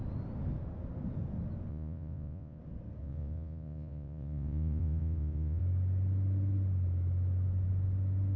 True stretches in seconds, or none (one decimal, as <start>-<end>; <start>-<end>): 0.0-1.7; 2.6-3.0; 5.6-8.4